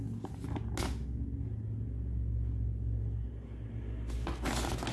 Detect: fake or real real